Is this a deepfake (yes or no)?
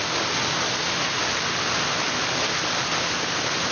no